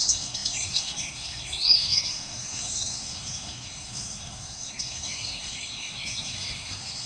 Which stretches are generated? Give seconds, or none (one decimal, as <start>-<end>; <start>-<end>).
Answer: 0.0-7.1